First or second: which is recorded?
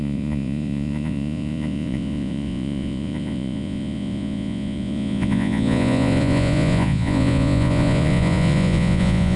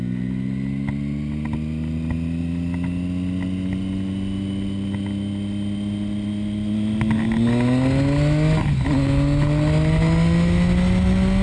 second